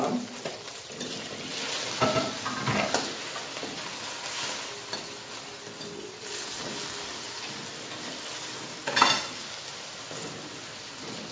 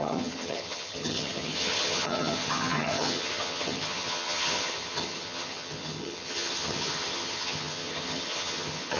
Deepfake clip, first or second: second